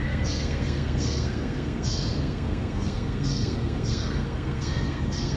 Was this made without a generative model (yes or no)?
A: no